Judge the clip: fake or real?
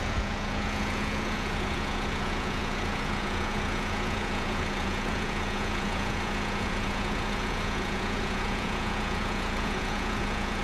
fake